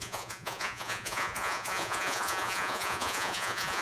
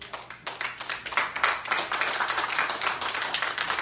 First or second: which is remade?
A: first